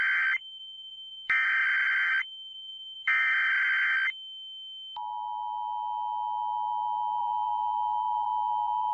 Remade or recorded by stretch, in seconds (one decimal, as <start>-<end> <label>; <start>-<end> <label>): 0.0-4.0 remade; 4.0-7.2 recorded; 7.2-8.9 remade